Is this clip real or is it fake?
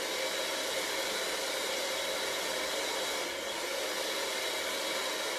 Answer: real